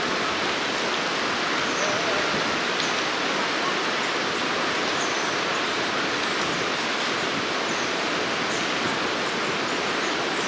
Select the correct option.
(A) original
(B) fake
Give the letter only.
A